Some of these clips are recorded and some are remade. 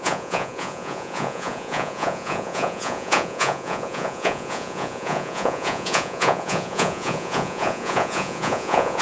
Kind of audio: remade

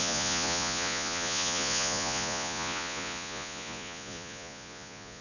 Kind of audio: remade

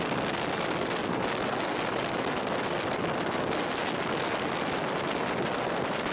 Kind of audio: recorded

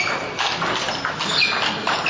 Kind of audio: recorded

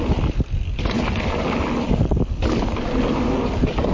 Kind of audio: recorded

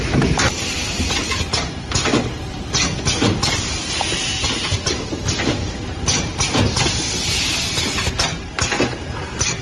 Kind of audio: recorded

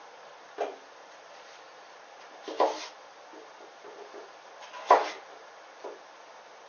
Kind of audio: recorded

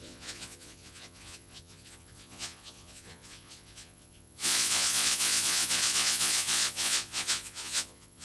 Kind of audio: remade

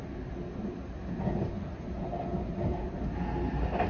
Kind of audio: recorded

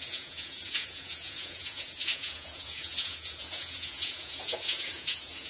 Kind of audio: remade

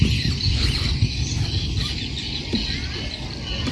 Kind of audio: recorded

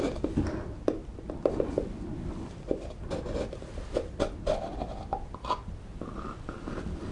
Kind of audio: recorded